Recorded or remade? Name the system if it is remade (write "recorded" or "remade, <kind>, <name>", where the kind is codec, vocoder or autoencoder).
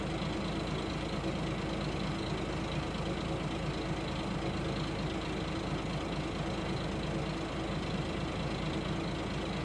recorded